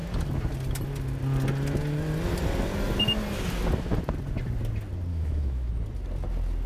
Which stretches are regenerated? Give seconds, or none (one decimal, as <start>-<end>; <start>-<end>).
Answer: 5.1-5.7